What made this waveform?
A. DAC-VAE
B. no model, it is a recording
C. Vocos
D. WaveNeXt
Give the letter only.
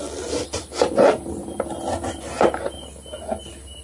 B